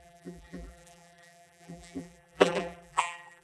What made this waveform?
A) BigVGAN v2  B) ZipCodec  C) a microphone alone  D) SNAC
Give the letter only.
A